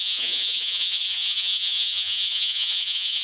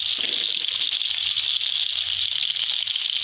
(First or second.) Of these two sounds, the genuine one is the second